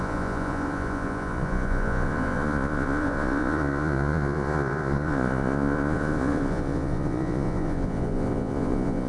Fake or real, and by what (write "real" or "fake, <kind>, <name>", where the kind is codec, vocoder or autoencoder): fake, vocoder, Vocos